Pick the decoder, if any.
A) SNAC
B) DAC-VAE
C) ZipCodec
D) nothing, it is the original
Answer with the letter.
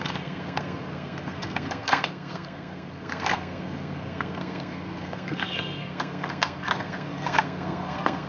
A